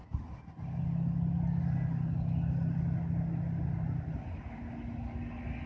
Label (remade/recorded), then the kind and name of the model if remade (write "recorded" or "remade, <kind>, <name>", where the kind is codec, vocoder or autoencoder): recorded